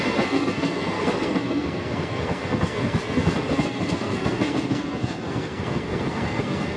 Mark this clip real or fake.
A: fake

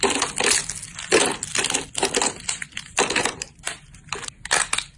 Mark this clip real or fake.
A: real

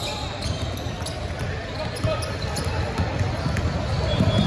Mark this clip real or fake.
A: real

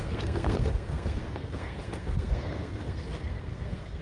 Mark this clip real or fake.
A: fake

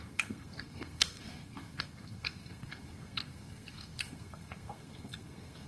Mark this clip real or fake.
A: fake